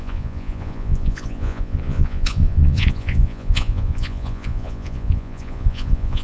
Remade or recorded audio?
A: remade